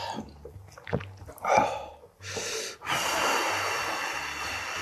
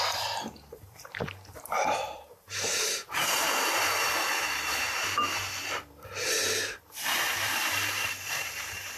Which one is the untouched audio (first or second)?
first